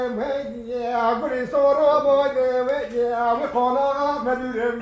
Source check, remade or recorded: recorded